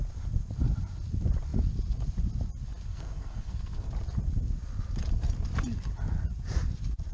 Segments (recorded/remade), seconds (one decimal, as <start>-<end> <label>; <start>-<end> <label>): 0.0-2.9 recorded; 2.9-3.9 remade; 3.9-7.1 recorded